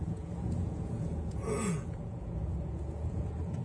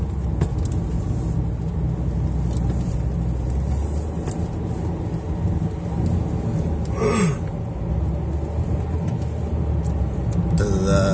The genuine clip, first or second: second